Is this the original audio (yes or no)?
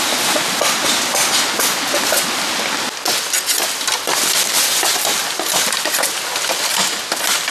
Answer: yes